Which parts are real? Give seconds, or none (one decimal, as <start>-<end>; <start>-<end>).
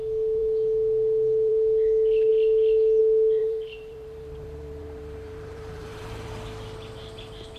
0.0-3.4; 6.3-7.6